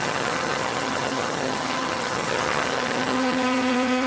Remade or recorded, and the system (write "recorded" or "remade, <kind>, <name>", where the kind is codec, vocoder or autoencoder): remade, vocoder, HiFi-GAN